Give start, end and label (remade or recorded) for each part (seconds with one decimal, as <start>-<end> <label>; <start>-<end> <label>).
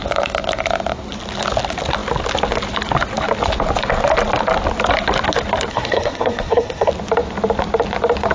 0.0-5.7 recorded; 5.7-6.9 remade; 6.9-8.3 recorded